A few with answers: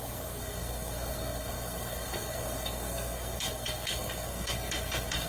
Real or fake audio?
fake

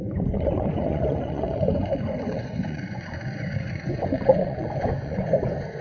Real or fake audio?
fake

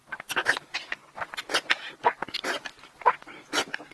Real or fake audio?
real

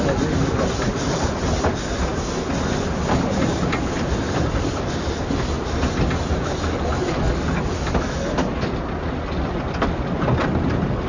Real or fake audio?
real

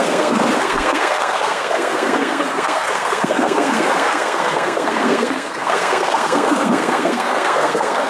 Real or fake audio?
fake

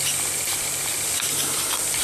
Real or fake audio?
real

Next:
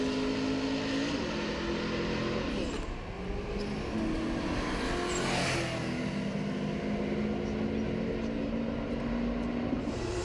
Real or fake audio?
real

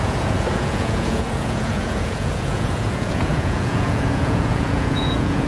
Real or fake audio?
fake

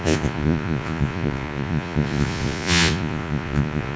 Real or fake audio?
fake